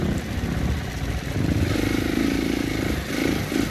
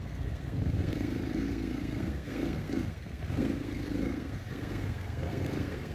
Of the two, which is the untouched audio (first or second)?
first